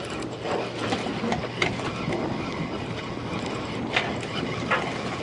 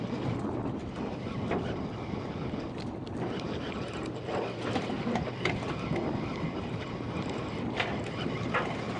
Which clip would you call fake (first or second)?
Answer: second